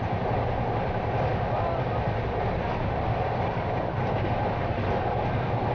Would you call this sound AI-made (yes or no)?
no